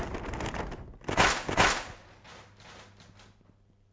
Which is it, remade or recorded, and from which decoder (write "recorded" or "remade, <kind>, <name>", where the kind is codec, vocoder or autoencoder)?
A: recorded